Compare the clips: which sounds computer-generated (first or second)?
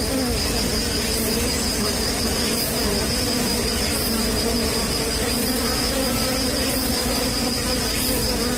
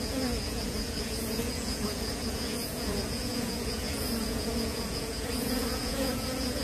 second